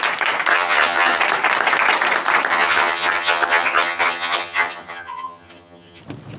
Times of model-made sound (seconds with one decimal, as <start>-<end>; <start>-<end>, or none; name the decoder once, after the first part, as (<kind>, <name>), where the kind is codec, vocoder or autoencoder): 0.5-1.2 (vocoder, HiFi-GAN); 2.5-6.0